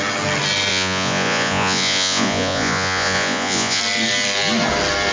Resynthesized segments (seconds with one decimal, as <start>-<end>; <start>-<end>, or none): 0.7-3.8

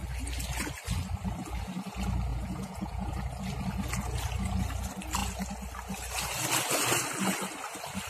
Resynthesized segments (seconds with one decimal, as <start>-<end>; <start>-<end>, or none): 2.3-3.1

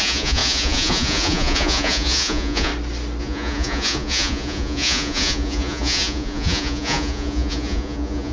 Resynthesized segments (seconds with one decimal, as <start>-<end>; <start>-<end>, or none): 0.0-2.7; 3.2-8.3

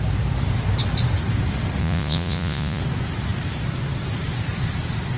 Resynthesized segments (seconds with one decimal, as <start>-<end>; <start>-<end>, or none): 1.8-2.8

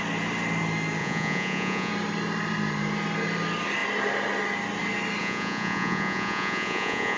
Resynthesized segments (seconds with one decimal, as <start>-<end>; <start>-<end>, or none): 1.0-1.9; 5.2-7.2